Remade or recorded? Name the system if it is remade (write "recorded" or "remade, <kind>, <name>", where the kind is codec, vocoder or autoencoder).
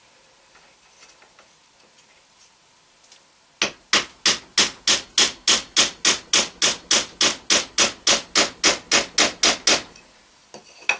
recorded